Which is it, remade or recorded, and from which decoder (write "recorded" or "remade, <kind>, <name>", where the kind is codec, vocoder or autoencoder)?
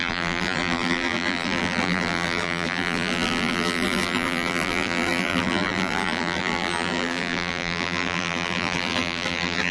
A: remade, vocoder, BigVGAN v2